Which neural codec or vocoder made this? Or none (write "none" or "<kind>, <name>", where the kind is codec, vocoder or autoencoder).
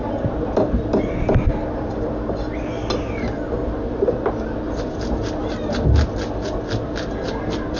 none